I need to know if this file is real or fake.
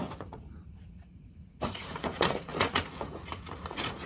fake